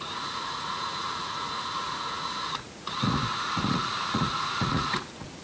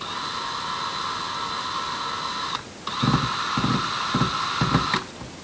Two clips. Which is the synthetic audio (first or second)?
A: first